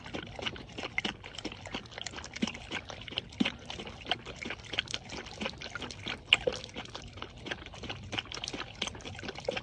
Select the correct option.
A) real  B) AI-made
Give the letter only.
A